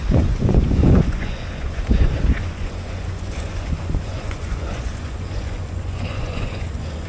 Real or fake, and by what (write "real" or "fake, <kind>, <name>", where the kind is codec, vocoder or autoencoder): fake, vocoder, Vocos